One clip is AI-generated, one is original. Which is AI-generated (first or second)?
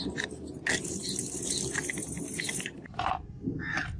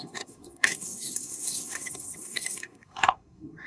second